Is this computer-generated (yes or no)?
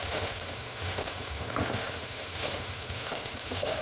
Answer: yes